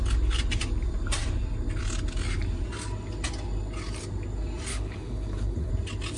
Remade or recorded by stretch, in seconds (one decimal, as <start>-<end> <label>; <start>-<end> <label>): 0.0-4.7 recorded; 4.7-5.7 remade; 5.7-6.2 recorded